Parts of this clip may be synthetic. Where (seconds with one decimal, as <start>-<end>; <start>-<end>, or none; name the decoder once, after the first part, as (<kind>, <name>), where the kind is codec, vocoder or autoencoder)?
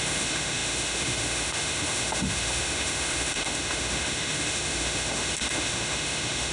0.0-6.5 (autoencoder, DAC-VAE)